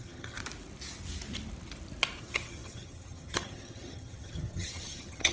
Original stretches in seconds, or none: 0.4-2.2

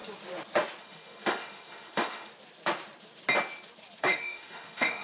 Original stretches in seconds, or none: 0.0-0.8; 2.3-4.0

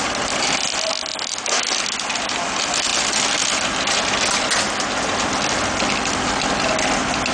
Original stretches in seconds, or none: 0.0-7.3

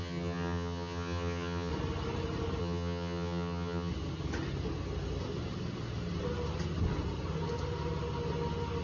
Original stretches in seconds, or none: 1.7-2.6; 3.9-8.8

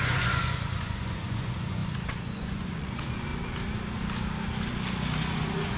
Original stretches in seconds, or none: 3.3-5.2